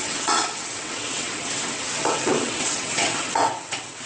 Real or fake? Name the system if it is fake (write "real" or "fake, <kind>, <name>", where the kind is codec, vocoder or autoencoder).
fake, vocoder, WaveNeXt